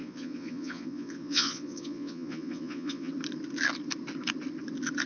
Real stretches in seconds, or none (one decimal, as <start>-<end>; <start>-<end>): 3.1-5.1